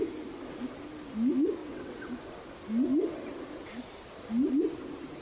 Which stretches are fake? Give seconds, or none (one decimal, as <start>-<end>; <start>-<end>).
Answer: 1.6-2.1